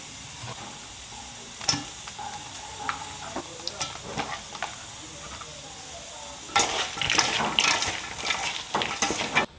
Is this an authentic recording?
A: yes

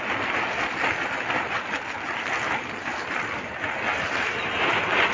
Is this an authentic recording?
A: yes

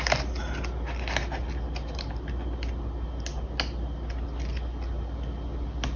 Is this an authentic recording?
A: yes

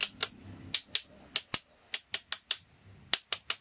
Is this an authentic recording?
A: yes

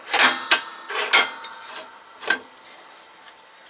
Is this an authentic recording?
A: yes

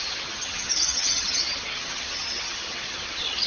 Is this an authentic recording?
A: no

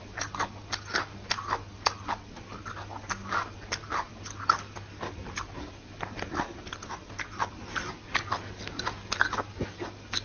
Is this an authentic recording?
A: yes